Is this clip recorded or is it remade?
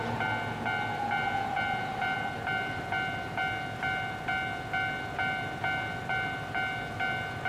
recorded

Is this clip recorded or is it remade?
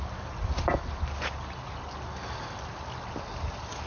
recorded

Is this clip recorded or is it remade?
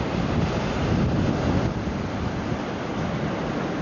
recorded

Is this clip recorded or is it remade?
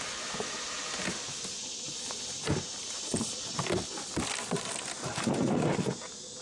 recorded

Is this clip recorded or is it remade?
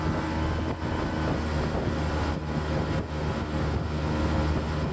recorded